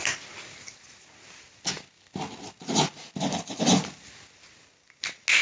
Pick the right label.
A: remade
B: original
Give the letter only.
B